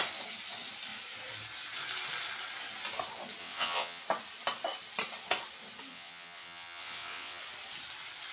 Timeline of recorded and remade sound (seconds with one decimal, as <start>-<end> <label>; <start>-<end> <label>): 0.0-3.4 recorded; 3.4-4.0 remade; 4.0-5.9 recorded; 5.9-7.4 remade; 7.4-8.3 recorded